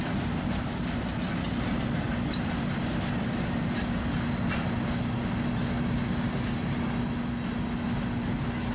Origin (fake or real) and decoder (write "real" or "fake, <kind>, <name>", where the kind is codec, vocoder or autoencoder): real